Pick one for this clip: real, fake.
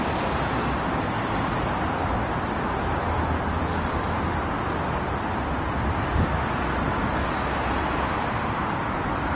fake